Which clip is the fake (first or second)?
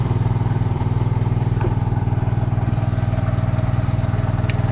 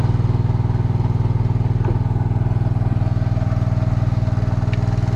first